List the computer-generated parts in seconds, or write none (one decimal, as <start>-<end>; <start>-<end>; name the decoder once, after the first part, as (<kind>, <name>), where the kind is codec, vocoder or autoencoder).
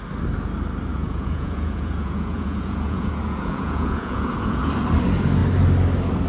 0.9-4.7 (vocoder, Vocos)